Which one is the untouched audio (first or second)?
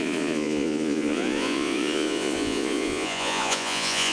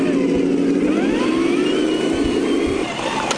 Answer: second